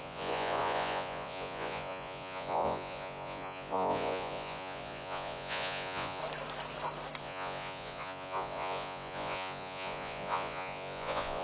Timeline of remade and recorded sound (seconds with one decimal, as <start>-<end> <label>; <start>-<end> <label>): 0.0-6.2 remade; 6.2-7.2 recorded; 7.2-11.4 remade